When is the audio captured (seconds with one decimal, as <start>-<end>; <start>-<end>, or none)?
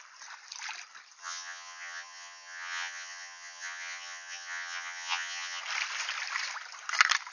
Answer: 0.0-1.2; 5.6-7.3